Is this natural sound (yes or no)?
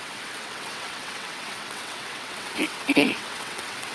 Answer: no